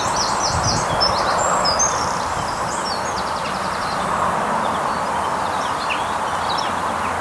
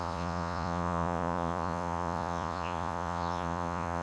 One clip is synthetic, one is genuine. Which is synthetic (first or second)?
second